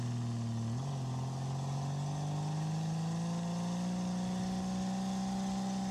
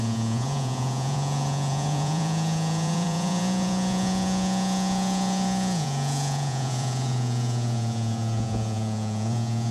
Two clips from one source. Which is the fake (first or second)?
second